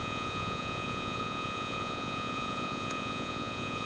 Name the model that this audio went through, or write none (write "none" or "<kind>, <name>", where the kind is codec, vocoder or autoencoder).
vocoder, Vocos